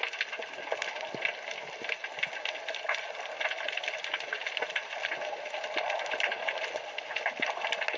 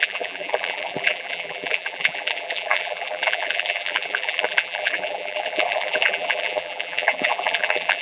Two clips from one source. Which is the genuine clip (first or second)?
first